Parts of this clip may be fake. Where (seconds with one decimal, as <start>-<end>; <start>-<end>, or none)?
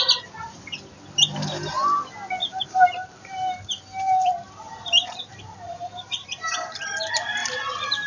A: 2.4-4.3; 5.3-6.8; 7.4-8.1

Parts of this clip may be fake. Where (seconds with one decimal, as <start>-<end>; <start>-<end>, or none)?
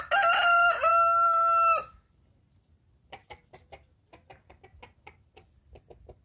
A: none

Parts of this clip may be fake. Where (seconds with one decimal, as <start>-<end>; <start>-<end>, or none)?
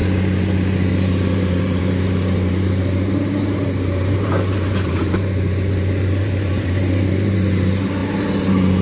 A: 0.0-8.8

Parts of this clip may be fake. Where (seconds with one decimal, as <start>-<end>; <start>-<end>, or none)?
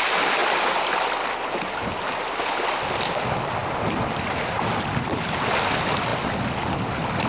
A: none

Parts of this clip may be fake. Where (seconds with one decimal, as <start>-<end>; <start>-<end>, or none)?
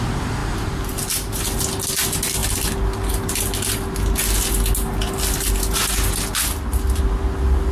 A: none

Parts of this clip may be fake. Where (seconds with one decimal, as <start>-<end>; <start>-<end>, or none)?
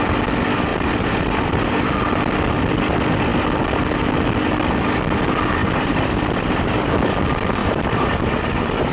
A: 0.7-1.7; 5.6-6.9; 7.6-8.9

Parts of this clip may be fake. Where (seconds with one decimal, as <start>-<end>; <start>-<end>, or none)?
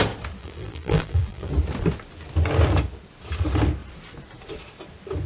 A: 0.4-1.5